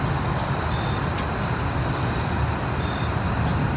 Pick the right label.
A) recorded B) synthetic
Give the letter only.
A